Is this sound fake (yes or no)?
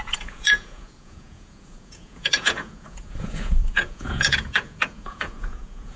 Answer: yes